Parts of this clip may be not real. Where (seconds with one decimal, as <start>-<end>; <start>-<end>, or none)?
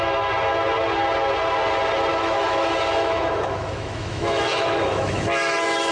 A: 2.1-5.9